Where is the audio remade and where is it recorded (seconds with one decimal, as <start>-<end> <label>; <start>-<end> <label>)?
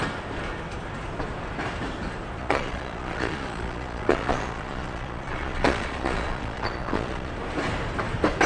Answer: 0.0-2.4 recorded; 2.4-7.3 remade; 7.3-8.5 recorded